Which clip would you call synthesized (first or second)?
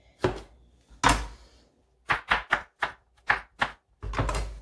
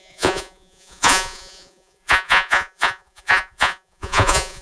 second